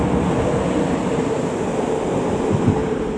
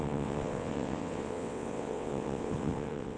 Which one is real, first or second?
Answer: first